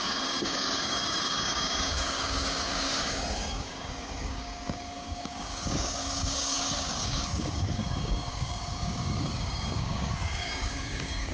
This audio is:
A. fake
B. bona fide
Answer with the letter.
A